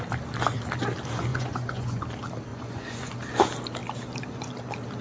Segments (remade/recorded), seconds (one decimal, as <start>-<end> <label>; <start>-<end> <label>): 0.0-1.3 recorded; 1.3-2.0 remade; 2.0-2.5 recorded; 2.5-3.1 remade; 3.1-5.0 recorded